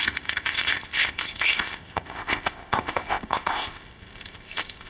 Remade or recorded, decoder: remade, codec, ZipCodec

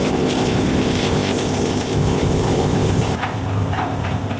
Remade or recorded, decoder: remade, codec, ZipCodec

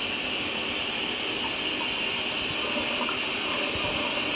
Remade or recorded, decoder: recorded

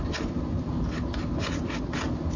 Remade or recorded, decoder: recorded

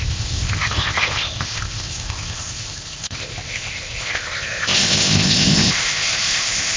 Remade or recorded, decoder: remade, codec, ZipCodec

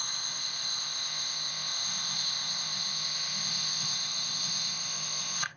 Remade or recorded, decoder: remade, codec, ZipCodec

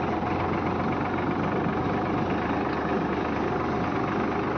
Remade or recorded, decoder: recorded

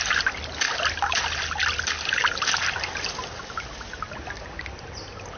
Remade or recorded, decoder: recorded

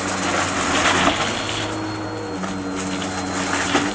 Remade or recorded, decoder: recorded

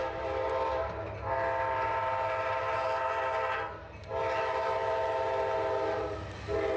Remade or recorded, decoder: recorded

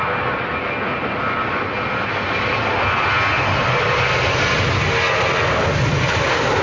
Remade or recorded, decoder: recorded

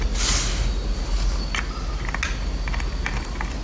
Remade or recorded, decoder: recorded